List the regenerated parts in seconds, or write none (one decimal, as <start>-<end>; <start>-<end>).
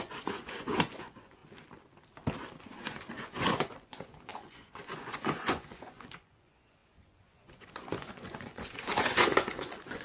0.0-1.4; 2.6-10.0